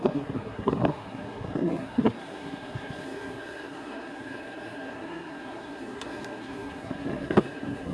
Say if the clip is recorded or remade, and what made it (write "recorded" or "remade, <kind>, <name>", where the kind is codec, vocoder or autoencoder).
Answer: remade, codec, SNAC